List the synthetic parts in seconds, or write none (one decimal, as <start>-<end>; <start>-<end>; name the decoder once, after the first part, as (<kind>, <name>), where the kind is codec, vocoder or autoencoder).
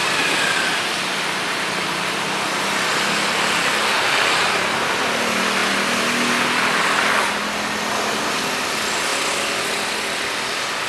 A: none